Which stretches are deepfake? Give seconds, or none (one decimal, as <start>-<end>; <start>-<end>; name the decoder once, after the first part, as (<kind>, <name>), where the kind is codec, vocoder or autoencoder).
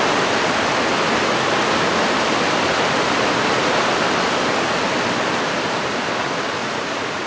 6.6-7.3 (vocoder, Vocos)